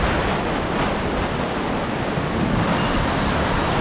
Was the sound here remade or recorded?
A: recorded